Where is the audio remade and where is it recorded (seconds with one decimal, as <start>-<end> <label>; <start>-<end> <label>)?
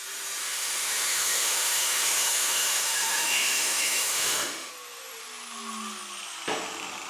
0.0-0.4 recorded; 0.4-4.7 remade; 4.7-7.1 recorded